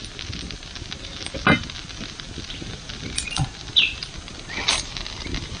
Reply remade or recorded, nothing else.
recorded